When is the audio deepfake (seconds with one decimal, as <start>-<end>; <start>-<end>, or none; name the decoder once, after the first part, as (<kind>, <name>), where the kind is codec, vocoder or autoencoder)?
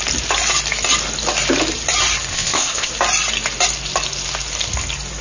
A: 2.3-2.9 (codec, ZipCodec)